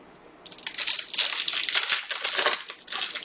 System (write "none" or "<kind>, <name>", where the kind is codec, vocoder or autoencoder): none